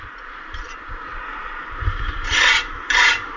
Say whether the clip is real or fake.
fake